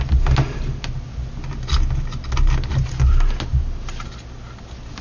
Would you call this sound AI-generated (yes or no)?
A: no